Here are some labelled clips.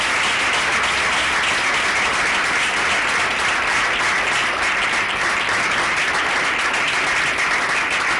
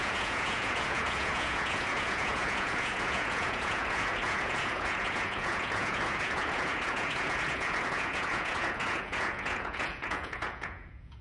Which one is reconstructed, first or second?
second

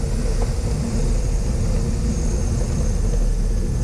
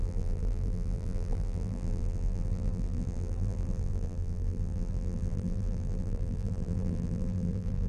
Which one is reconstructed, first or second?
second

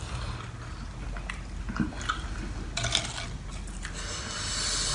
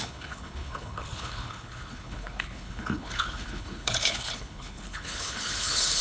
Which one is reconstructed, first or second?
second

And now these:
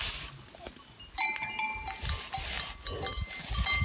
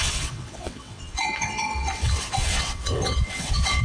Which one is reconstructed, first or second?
second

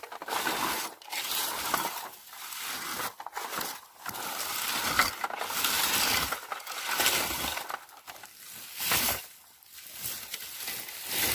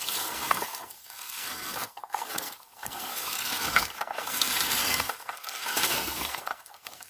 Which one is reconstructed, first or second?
second